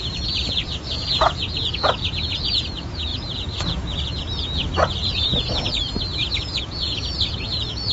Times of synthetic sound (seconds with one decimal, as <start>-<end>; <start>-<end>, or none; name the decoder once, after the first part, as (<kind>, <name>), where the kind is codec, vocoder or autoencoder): 0.0-5.8 (vocoder, Vocos); 6.4-7.9